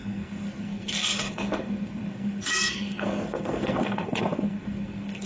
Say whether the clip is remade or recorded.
remade